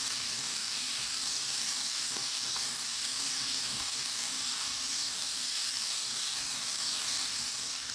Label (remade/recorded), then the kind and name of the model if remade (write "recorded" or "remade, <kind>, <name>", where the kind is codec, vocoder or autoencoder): remade, codec, DAC